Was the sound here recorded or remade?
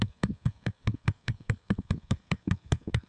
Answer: remade